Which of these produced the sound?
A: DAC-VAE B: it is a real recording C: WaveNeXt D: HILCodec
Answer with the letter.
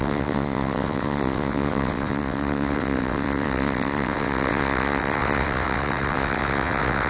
C